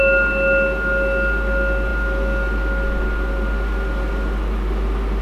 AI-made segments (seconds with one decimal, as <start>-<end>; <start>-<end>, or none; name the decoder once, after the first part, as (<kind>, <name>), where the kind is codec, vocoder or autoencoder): none